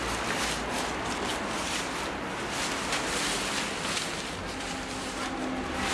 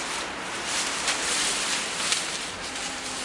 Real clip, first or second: first